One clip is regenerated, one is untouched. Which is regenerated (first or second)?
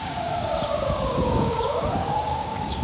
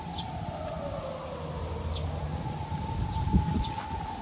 first